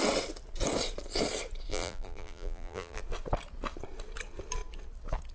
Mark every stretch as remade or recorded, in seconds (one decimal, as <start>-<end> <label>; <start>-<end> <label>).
0.0-1.7 recorded; 1.7-3.0 remade; 3.0-5.3 recorded